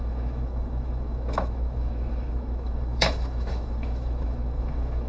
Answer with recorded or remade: remade